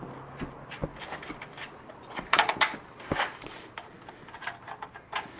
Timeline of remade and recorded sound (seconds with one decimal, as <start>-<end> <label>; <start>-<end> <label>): 0.0-5.4 recorded